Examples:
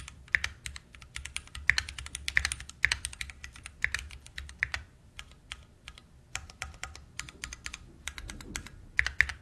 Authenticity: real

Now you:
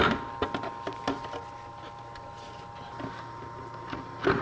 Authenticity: real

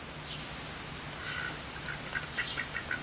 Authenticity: real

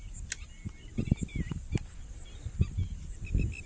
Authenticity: real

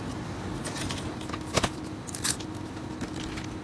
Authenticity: real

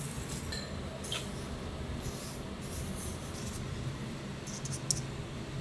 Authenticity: real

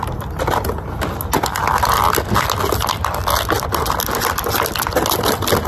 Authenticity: real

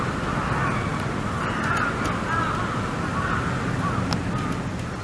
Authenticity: real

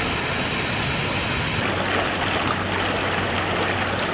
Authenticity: real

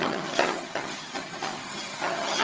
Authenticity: fake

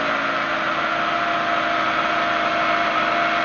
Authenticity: real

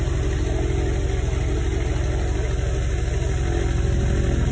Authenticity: real